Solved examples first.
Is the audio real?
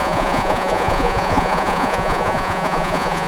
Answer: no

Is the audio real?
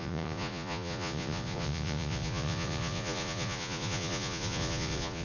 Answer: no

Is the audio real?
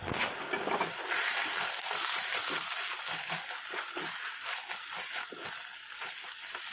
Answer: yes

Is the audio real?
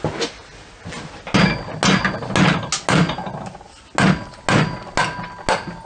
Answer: yes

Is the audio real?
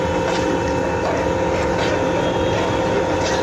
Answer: yes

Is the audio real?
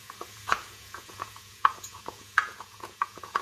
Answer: no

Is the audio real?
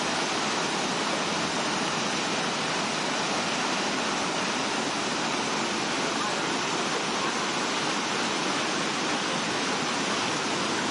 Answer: yes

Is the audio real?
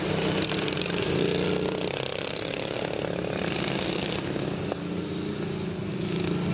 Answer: yes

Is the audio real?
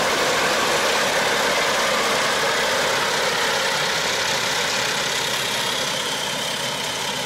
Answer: yes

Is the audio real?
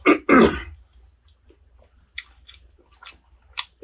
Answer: yes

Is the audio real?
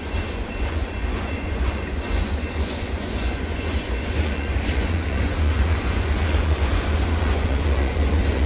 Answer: no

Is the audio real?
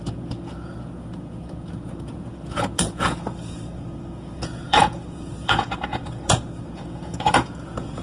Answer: no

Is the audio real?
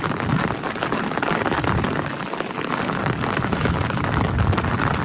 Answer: yes